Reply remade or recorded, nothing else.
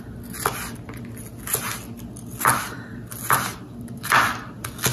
recorded